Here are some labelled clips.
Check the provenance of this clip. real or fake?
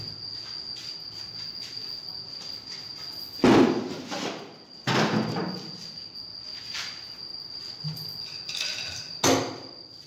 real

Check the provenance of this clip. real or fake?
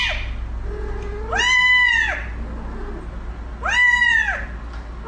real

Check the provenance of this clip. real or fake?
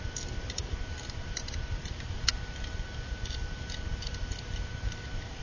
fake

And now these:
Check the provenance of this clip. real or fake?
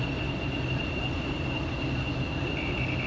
real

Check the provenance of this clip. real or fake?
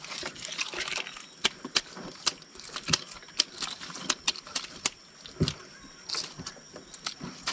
real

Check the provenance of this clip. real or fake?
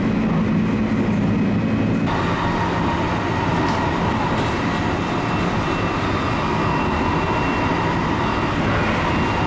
real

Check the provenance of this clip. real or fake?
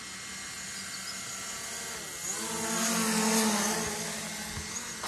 real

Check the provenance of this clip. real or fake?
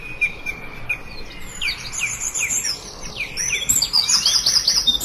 real